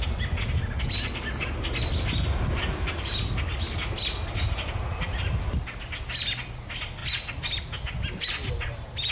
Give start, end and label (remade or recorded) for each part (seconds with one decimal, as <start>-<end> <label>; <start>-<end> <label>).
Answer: 0.0-9.1 recorded